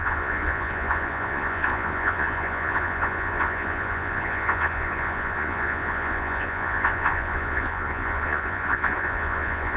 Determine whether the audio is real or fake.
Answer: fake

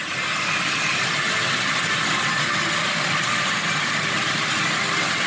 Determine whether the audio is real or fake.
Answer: real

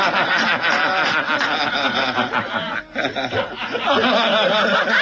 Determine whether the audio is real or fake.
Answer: real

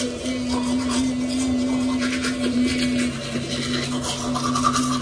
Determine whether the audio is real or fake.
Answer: real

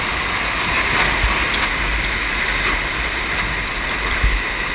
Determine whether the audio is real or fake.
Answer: real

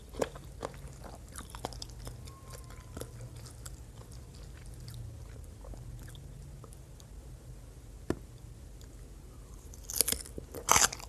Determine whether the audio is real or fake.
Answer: real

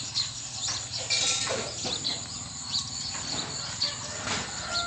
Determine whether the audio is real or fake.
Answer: real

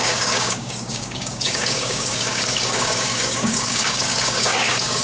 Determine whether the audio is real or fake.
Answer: fake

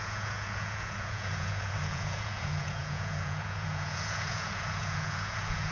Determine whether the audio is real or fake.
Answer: fake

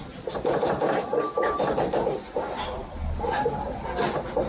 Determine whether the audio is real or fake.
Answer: real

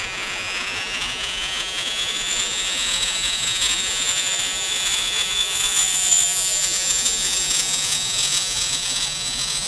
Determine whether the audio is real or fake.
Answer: fake